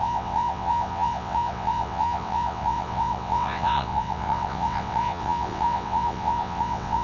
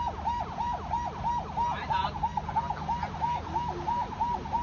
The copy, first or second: first